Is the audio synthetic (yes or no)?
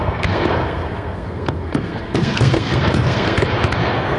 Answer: yes